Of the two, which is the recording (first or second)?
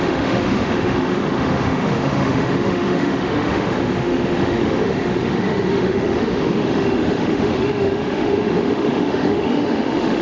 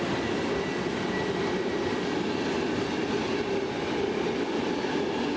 second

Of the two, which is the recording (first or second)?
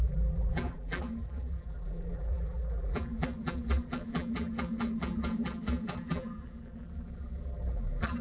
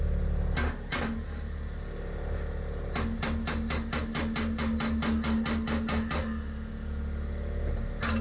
second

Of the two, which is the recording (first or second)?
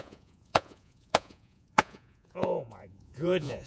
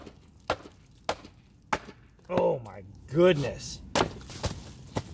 second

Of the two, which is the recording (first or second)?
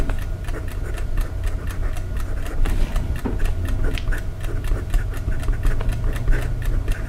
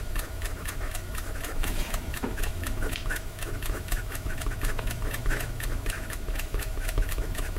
first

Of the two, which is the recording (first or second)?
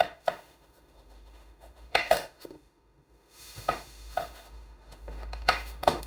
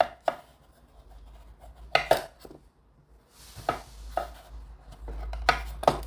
second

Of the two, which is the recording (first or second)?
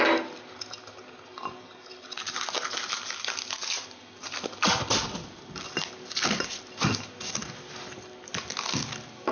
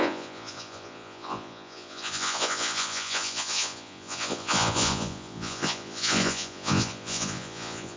first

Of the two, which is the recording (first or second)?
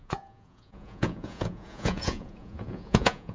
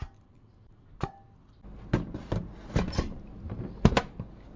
second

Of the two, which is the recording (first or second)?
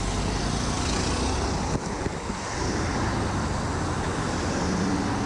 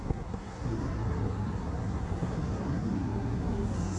first